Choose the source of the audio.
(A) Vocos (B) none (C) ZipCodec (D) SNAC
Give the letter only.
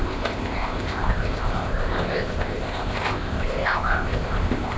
C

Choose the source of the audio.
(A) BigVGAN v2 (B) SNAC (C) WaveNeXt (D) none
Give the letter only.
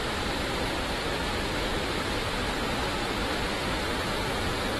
A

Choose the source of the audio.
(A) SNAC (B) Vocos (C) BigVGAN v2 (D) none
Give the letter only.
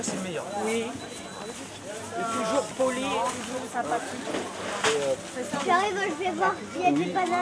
D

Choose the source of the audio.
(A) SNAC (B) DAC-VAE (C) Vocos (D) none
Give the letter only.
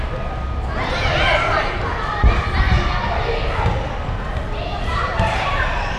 D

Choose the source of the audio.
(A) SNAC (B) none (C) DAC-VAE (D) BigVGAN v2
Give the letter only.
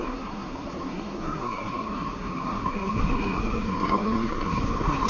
A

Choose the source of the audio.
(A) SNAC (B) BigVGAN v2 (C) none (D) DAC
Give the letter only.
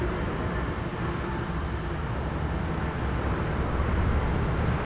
C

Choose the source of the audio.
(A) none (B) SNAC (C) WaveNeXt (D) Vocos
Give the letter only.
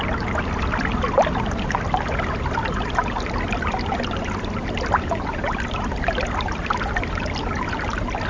A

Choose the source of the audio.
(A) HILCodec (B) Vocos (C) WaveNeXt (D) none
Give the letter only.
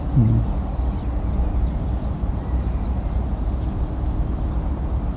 D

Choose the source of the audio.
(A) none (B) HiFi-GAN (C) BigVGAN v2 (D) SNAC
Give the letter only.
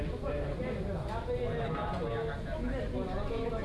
A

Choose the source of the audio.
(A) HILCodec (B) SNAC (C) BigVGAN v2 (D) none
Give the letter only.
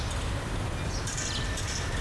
D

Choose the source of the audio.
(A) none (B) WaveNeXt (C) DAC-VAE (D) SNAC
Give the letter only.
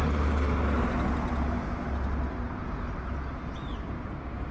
A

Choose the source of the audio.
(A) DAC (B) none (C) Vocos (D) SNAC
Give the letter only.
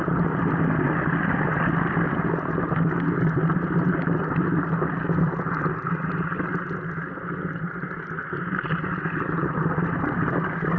B